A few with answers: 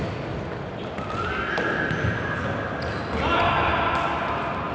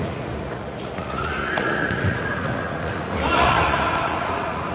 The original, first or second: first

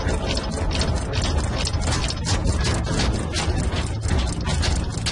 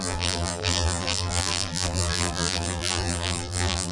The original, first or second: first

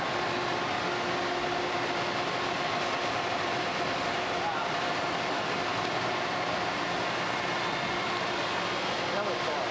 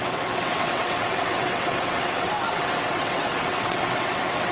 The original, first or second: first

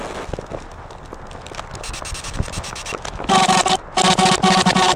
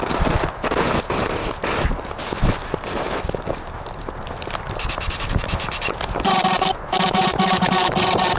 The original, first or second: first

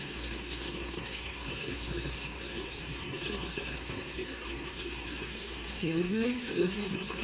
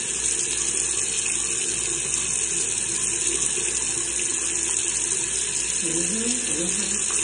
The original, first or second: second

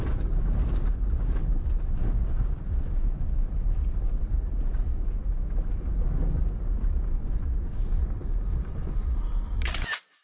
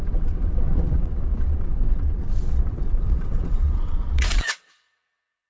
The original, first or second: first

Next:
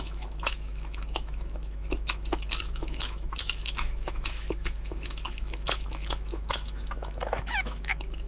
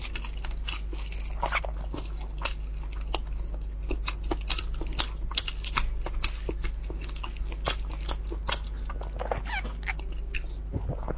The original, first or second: second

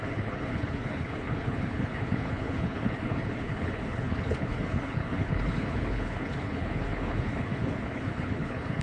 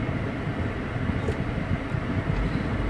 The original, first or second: second